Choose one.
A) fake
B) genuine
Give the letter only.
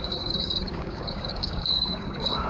A